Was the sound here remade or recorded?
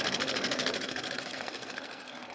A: remade